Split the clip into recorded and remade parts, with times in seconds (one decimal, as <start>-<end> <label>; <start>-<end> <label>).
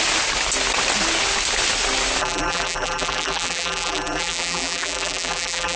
0.0-2.2 recorded; 2.2-5.8 remade